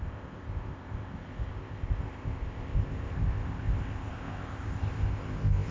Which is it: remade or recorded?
remade